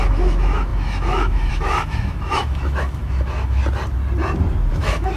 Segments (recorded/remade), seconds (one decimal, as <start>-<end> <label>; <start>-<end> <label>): 0.0-3.6 remade; 3.6-4.7 recorded; 4.7-5.2 remade